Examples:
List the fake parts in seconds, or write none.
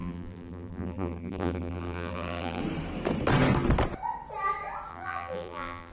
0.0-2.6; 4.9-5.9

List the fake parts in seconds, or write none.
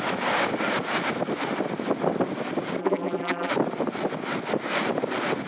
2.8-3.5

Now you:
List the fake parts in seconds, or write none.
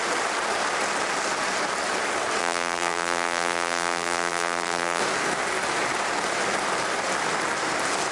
2.4-5.0